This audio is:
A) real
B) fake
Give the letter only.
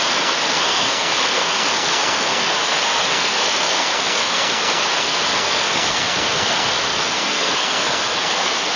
B